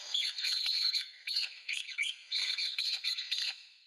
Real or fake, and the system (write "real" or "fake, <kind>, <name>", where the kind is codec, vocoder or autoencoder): fake, codec, SNAC